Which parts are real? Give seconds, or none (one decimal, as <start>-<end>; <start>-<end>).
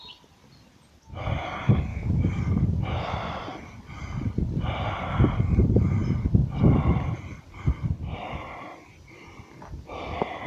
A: 0.0-1.9; 2.5-10.5